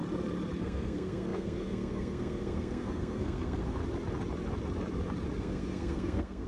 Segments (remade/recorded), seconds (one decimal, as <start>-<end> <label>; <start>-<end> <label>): 0.0-0.6 recorded; 0.6-3.8 remade; 3.8-5.4 recorded; 5.4-6.5 remade